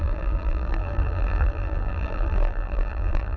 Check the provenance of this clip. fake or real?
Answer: fake